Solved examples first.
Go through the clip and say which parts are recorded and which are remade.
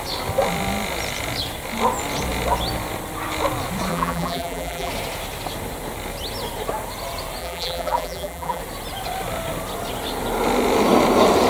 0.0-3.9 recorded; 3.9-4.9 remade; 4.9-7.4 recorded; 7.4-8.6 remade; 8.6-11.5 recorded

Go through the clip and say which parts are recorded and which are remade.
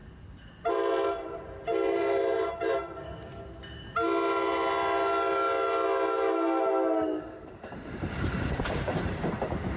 0.0-0.7 recorded; 0.7-3.1 remade; 3.1-7.5 recorded; 7.5-9.8 remade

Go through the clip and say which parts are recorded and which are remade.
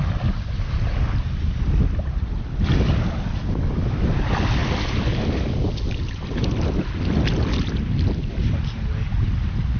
0.0-9.8 recorded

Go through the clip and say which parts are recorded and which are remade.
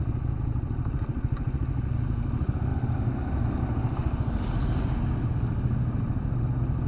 0.0-2.7 recorded; 2.7-3.6 remade; 3.6-6.9 recorded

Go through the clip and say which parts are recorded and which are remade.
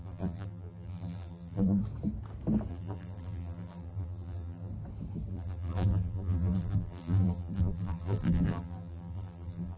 0.0-1.8 remade; 1.8-2.7 recorded; 2.7-4.7 remade; 4.7-5.3 recorded; 5.3-9.8 remade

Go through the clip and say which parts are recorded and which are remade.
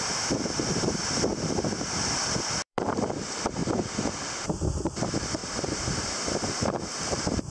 0.0-1.3 remade; 1.3-2.6 recorded; 2.6-3.6 remade; 3.6-4.8 recorded; 4.8-7.5 remade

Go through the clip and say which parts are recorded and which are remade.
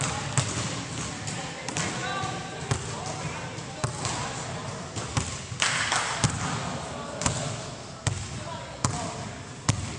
0.0-10.0 recorded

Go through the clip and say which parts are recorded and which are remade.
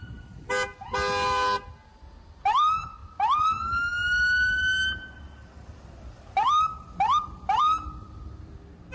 0.0-8.9 recorded